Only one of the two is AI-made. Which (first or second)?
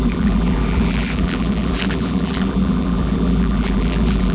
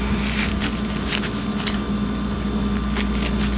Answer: first